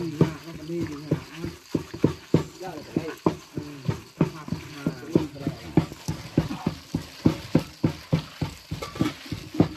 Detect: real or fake real